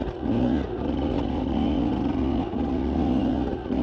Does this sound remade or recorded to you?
remade